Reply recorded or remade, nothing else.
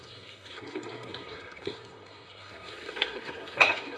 remade